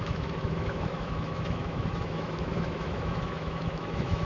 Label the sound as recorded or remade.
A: remade